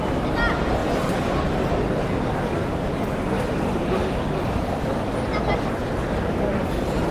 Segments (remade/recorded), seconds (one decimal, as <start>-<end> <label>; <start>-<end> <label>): 0.0-7.1 recorded